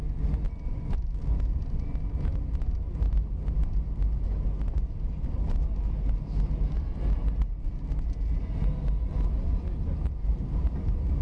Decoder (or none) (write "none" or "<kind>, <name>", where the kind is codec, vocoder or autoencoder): none